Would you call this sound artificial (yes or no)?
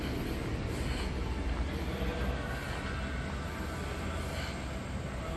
no